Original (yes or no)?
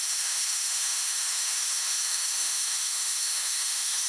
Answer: no